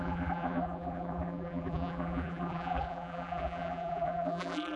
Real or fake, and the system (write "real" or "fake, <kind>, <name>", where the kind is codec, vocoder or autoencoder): fake, vocoder, BigVGAN v2